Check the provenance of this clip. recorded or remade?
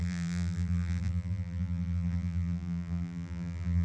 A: remade